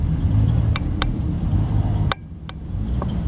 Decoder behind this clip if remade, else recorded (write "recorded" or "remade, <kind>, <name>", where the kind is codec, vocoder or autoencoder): remade, vocoder, BigVGAN v2